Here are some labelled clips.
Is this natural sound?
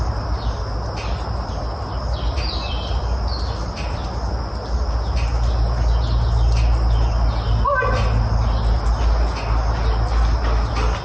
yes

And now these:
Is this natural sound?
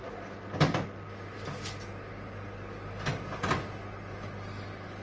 yes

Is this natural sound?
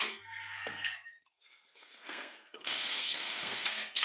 no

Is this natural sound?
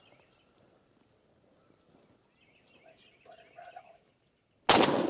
yes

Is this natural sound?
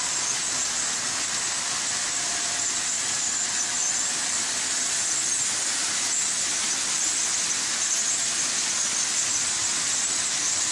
yes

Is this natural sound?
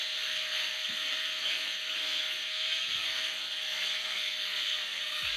no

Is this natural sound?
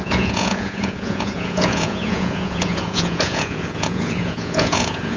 no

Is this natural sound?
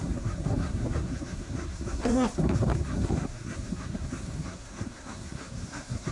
no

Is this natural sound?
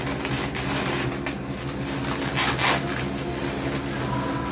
yes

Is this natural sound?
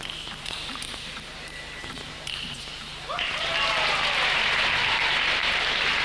no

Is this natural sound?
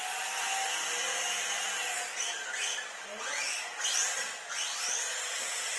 yes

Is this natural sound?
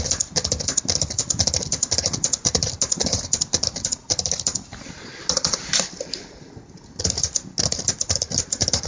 yes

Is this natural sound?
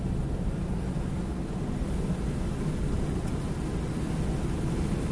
yes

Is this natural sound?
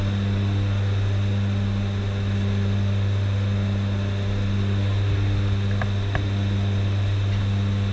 yes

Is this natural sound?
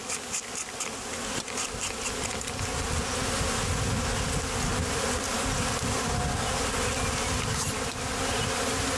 yes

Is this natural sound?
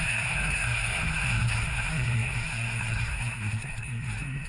no